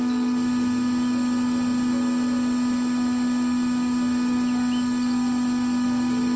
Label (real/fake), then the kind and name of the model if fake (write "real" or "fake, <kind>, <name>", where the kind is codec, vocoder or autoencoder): real